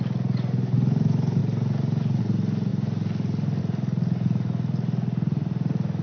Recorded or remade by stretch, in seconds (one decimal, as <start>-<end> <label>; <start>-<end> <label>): 0.0-6.0 recorded